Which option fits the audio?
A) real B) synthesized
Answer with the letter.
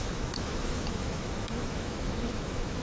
B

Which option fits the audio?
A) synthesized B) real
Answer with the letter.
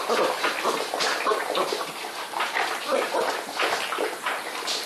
B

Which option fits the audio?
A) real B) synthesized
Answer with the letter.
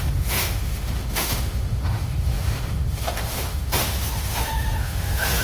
B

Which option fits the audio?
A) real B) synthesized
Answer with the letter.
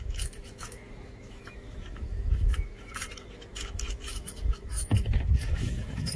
B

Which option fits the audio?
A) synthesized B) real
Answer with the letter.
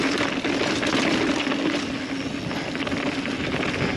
B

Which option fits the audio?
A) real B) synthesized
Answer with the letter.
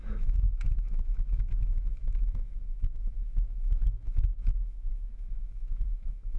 B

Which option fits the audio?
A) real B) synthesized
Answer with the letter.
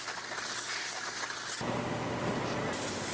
A